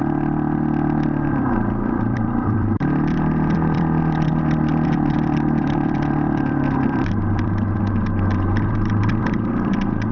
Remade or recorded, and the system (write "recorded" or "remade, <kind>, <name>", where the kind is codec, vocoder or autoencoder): remade, vocoder, BigVGAN v2